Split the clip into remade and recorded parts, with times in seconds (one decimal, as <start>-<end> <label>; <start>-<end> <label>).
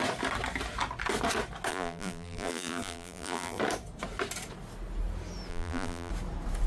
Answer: 0.0-1.7 recorded; 1.7-3.6 remade; 3.6-5.5 recorded; 5.5-6.1 remade; 6.1-6.7 recorded